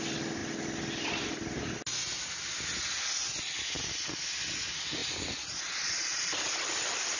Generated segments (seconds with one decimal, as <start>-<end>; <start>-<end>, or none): none